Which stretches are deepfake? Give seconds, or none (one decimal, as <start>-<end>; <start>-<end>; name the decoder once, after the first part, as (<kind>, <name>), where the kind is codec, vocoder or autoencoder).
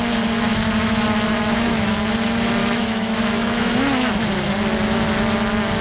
1.3-1.9 (autoencoder, DAC-VAE); 2.6-4.1